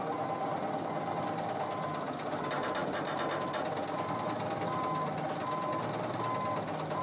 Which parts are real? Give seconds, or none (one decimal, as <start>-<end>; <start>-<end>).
0.0-7.0